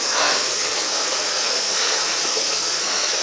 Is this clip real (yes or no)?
no